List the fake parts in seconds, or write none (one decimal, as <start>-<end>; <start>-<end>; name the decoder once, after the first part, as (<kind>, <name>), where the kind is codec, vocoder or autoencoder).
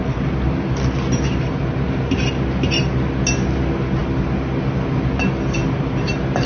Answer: none